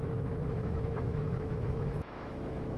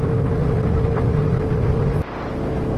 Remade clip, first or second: first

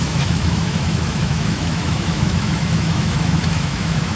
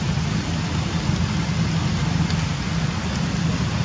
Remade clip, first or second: first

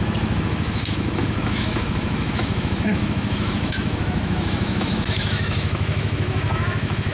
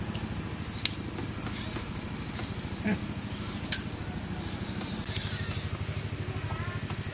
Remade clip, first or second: first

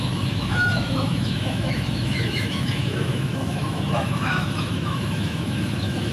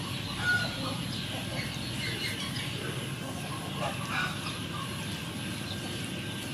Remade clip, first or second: first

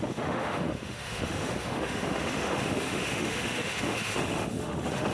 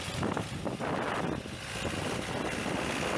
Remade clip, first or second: first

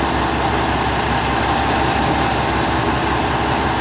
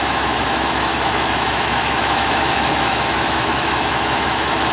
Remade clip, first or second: second